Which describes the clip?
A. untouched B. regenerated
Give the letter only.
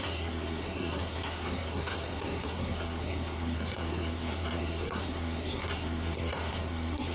B